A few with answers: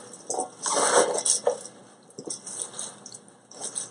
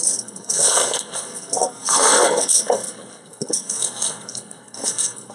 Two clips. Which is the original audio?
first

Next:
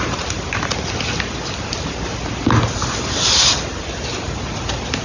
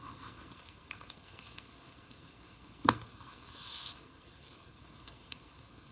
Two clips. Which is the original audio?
first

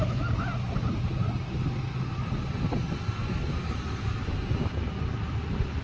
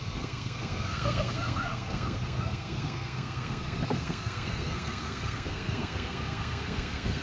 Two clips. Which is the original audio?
first